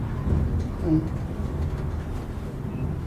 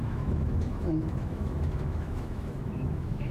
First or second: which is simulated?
second